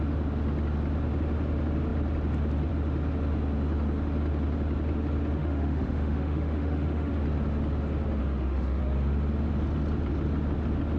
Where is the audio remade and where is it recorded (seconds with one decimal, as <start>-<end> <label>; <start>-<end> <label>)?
0.0-5.4 recorded; 5.4-7.1 remade; 7.1-8.2 recorded; 8.2-8.8 remade; 8.8-11.0 recorded